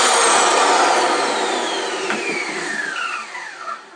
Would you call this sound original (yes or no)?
yes